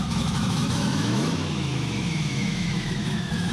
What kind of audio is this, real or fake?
fake